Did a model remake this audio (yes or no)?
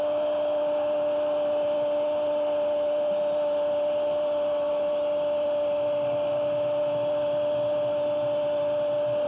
no